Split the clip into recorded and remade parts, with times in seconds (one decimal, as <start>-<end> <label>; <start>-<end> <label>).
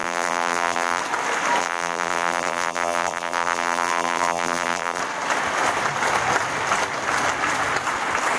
0.0-1.0 remade; 1.0-1.6 recorded; 1.6-5.0 remade; 5.0-8.4 recorded